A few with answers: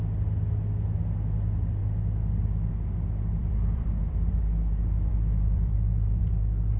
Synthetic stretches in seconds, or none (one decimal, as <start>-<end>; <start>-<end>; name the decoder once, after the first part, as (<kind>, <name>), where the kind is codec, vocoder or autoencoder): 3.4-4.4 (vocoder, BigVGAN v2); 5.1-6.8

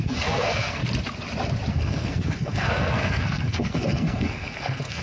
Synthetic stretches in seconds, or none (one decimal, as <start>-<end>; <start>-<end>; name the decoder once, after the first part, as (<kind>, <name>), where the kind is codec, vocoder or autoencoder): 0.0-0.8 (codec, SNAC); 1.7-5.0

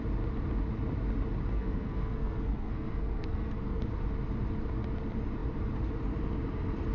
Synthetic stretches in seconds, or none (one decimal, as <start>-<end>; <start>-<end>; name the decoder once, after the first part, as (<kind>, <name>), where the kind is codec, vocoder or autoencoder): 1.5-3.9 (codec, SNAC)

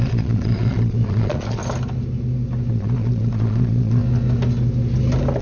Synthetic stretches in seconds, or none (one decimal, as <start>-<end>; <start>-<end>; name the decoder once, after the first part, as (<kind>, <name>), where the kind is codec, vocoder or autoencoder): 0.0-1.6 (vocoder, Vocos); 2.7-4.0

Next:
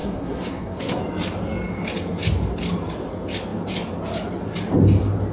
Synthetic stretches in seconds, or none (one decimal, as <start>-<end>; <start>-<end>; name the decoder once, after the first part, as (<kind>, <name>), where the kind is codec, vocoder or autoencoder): 0.0-1.0 (codec, SNAC)